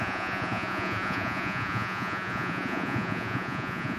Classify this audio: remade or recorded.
remade